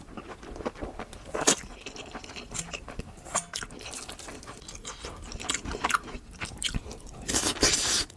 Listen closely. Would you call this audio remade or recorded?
recorded